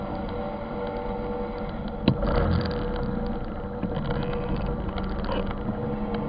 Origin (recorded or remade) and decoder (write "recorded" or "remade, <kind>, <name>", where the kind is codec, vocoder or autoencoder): recorded